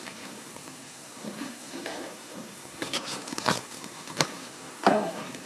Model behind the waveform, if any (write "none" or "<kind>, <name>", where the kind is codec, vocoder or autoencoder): codec, SNAC